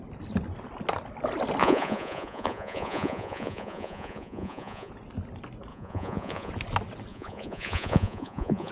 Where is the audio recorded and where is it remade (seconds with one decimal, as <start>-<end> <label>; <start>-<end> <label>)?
0.0-1.6 recorded; 1.6-4.9 remade; 4.9-5.7 recorded; 5.7-6.5 remade; 6.5-7.1 recorded; 7.1-8.7 remade